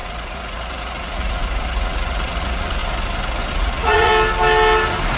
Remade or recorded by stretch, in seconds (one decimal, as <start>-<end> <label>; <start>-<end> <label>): 0.0-2.8 remade; 2.8-3.5 recorded; 3.5-4.1 remade; 4.1-5.2 recorded